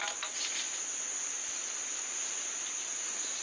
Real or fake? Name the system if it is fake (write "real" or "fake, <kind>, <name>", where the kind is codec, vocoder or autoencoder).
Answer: real